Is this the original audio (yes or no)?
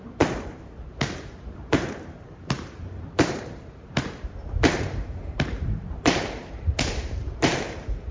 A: no